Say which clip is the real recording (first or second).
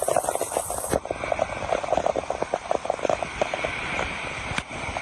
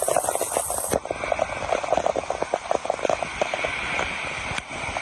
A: second